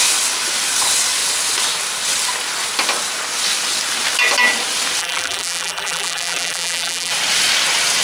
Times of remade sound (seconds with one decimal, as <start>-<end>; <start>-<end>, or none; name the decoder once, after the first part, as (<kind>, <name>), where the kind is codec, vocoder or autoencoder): 5.0-7.1 (vocoder, BigVGAN v2)